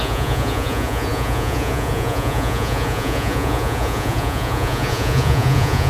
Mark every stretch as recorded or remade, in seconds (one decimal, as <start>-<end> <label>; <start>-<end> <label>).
0.0-5.9 remade